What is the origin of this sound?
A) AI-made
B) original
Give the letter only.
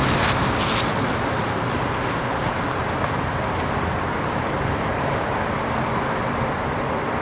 A